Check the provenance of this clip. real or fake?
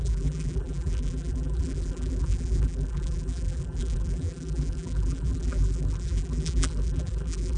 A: fake